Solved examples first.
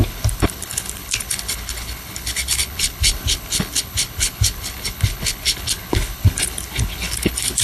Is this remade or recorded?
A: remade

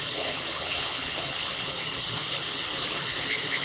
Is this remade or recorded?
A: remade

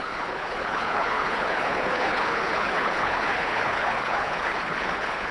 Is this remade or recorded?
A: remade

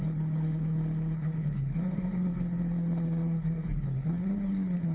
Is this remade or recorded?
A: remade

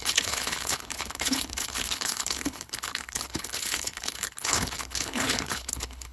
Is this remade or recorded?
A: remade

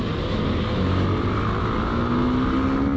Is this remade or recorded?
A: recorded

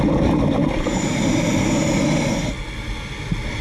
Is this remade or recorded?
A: recorded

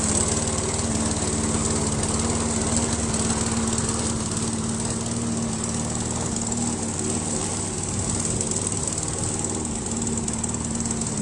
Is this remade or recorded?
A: recorded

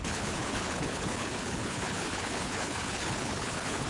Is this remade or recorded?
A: remade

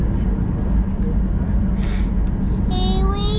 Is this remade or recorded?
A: recorded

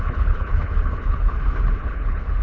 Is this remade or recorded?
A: remade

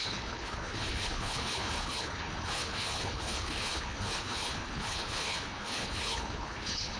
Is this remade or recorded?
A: remade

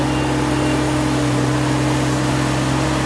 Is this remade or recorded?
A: recorded